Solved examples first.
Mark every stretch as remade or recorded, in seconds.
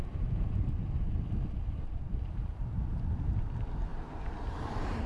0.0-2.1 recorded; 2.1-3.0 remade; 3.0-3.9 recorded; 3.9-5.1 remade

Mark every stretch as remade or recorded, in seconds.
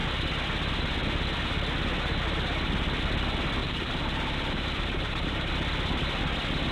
0.0-3.6 recorded; 3.6-5.5 remade; 5.5-6.7 recorded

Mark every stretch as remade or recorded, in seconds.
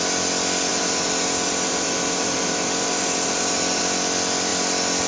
0.0-0.7 recorded; 0.7-3.8 remade; 3.8-5.1 recorded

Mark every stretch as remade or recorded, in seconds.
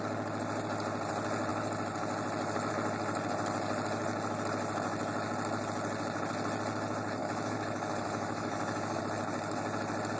0.0-7.2 recorded; 7.2-9.0 remade; 9.0-10.2 recorded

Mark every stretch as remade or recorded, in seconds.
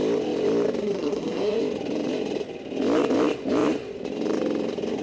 0.0-0.8 recorded; 0.8-1.6 remade; 1.6-5.0 recorded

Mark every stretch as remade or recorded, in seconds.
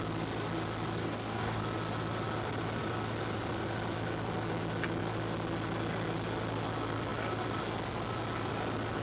0.0-1.0 recorded; 1.0-1.6 remade; 1.6-9.0 recorded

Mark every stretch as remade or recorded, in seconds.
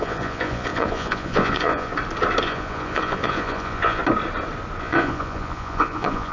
0.0-1.9 remade; 1.9-2.4 recorded; 2.4-4.0 remade; 4.0-4.8 recorded; 4.8-6.3 remade